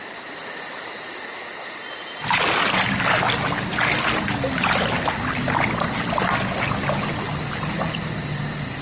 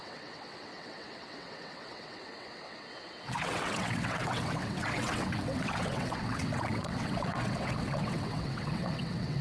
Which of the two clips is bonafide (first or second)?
first